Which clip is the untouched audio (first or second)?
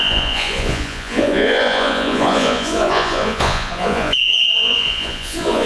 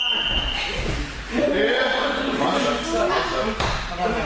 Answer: second